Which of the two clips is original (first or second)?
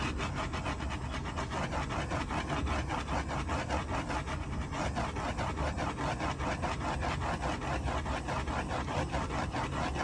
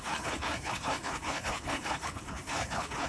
first